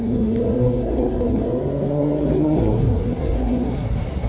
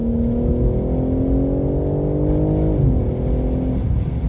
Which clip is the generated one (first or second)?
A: first